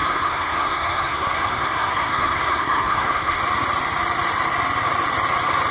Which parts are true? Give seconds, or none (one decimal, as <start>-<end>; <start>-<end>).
3.4-5.7